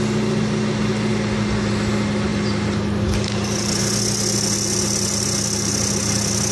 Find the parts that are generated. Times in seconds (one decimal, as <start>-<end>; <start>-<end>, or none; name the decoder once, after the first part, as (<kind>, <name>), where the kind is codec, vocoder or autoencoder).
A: 1.1-1.7 (vocoder, BigVGAN v2); 2.3-3.8

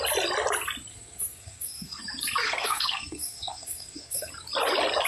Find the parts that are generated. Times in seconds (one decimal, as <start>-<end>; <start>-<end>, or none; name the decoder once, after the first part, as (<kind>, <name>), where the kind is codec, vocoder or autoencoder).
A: 0.9-2.0 (codec, SNAC); 2.4-4.3

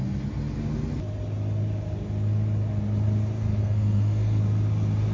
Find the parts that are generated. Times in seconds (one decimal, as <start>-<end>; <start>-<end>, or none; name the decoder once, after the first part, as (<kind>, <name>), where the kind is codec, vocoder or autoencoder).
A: 3.6-4.4 (codec, SNAC)

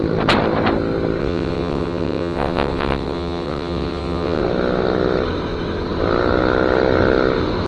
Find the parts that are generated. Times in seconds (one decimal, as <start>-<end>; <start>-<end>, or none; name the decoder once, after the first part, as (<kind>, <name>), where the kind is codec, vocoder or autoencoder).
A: 1.2-4.4 (vocoder, WaveNeXt)

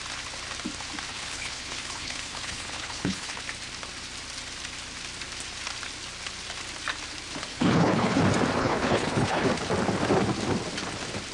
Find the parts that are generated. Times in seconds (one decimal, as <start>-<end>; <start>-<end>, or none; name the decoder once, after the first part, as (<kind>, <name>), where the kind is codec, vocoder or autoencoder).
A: 1.1-3.4 (codec, HILCodec); 7.5-8.2; 8.6-9.5

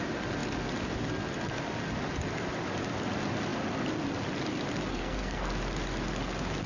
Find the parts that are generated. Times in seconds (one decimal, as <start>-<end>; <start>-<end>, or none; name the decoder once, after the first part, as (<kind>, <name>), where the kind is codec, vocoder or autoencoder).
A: 4.9-5.5 (codec, SNAC)

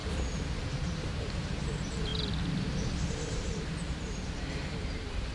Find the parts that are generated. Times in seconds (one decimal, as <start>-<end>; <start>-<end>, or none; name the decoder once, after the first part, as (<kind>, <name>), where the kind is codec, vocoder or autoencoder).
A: 0.6-2.1 (vocoder, BigVGAN v2); 3.1-5.3